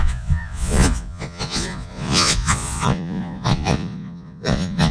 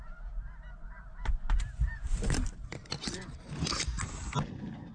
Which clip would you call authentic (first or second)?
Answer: second